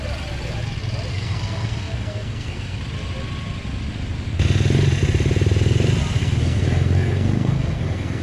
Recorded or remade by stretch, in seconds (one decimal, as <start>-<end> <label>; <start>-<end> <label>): 0.0-1.1 recorded; 1.1-2.8 remade; 2.8-6.2 recorded; 6.2-8.2 remade